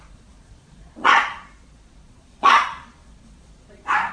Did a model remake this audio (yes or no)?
yes